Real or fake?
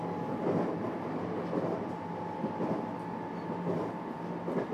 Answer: real